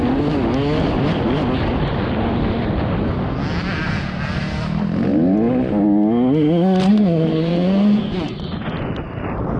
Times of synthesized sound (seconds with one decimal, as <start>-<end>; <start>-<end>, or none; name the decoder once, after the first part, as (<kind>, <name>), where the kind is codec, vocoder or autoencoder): 6.9-8.9 (vocoder, Vocos)